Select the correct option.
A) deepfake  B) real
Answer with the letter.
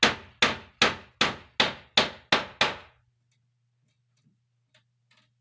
B